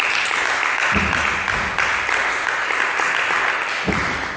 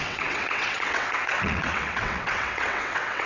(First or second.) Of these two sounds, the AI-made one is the second